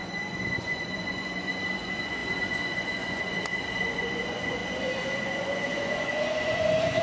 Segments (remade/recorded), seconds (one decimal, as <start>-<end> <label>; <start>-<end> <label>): 0.0-7.0 remade